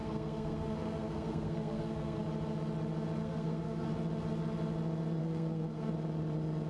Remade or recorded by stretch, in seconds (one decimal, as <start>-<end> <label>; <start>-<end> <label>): 0.0-2.2 remade; 2.2-3.2 recorded; 3.2-3.9 remade; 3.9-5.2 recorded; 5.2-5.9 remade; 5.9-6.7 recorded